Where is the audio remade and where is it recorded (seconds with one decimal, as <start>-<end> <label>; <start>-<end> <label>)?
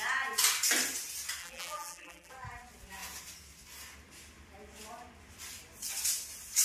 0.0-1.4 recorded; 1.4-2.3 remade; 2.3-6.6 recorded